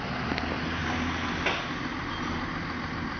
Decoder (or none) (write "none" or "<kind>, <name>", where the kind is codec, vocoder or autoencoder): none